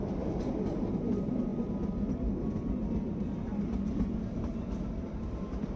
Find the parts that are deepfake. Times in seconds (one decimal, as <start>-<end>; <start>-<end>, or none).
none

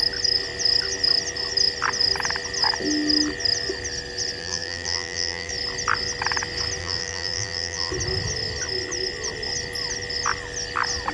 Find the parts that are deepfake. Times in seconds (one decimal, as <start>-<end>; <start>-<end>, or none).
4.4-5.5; 6.8-7.9

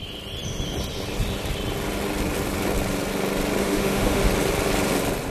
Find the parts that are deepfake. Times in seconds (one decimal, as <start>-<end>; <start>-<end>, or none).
3.6-4.2

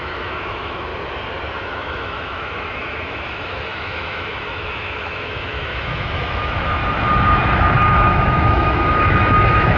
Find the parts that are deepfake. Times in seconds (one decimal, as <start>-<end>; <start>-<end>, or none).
0.0-0.9; 1.5-6.8; 7.9-9.8

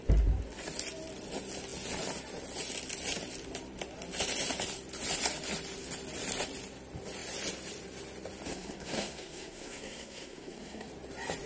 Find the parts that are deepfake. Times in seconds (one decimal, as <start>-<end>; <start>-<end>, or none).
8.5-10.9

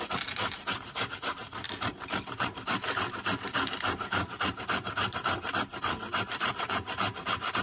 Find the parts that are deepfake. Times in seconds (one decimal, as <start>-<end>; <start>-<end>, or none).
0.0-1.4; 1.9-7.6

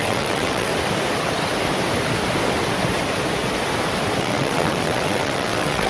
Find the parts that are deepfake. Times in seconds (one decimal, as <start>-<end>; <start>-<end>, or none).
0.0-0.7; 4.2-5.9